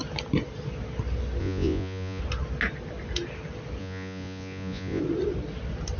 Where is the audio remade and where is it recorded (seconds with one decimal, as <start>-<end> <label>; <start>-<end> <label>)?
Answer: 0.0-1.4 recorded; 1.4-2.2 remade; 2.2-3.8 recorded; 3.8-5.0 remade; 5.0-6.0 recorded